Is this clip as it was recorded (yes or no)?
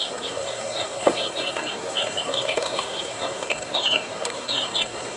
no